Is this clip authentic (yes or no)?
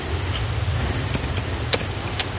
yes